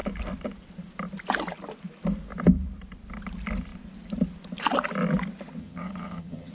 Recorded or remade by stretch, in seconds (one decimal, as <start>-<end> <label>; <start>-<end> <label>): 0.0-5.6 recorded; 5.6-6.5 remade